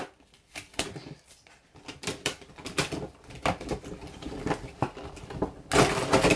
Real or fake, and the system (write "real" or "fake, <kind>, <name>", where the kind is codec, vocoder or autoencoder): real